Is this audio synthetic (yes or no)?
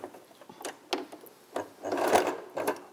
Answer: no